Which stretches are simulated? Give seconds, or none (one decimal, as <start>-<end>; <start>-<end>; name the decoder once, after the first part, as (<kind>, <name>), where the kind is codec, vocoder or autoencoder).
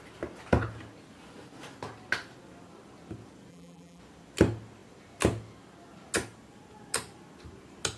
3.5-4.0 (vocoder, BigVGAN v2)